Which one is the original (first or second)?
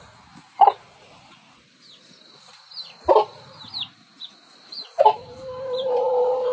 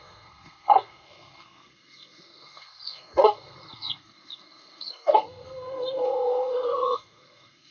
first